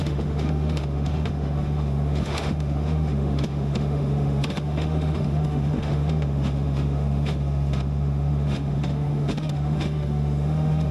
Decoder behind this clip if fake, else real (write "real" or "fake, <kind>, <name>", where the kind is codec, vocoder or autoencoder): fake, autoencoder, DAC-VAE